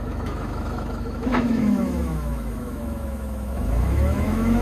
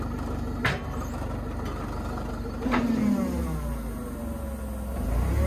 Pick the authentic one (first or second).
second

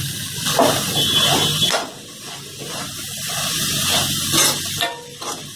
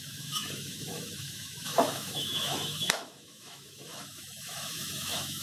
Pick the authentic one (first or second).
first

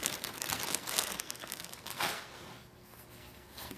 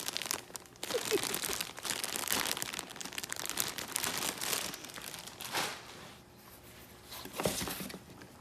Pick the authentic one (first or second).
second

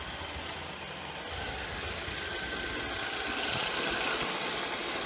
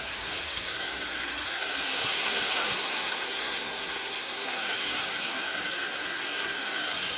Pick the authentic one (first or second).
first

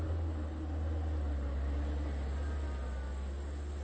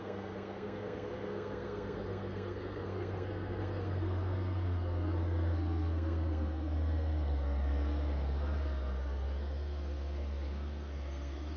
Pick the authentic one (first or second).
first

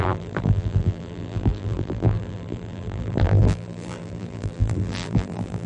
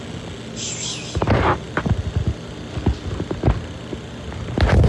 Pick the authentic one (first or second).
second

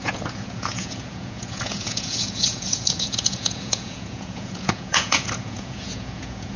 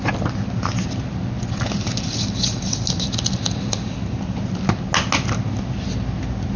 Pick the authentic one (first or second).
second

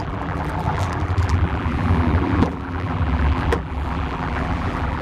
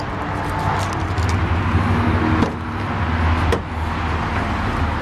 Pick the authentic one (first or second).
second